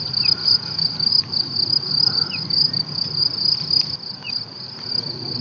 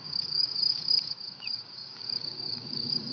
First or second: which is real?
first